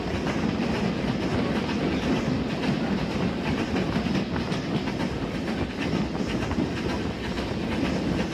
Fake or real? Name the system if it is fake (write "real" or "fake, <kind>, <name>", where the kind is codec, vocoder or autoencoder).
real